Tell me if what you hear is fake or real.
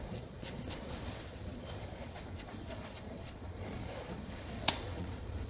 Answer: fake